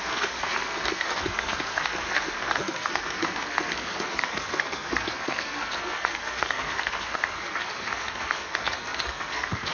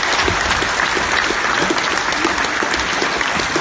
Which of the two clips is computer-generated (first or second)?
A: first